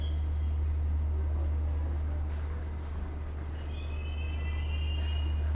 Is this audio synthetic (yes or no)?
no